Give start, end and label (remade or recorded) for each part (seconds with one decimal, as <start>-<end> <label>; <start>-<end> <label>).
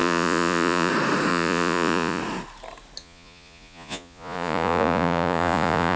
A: 0.0-0.9 remade; 0.9-1.3 recorded; 1.3-2.2 remade; 2.2-3.0 recorded; 3.0-6.0 remade